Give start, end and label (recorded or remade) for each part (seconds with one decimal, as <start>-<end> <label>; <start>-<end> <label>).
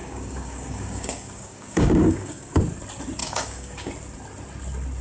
0.0-2.6 remade; 2.6-3.2 recorded; 3.2-3.9 remade; 3.9-5.0 recorded